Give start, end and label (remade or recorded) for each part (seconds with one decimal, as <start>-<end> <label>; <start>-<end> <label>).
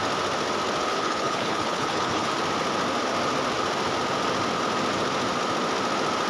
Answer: 0.0-0.9 recorded; 0.9-2.3 remade; 2.3-6.3 recorded